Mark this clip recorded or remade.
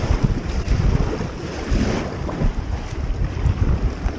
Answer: recorded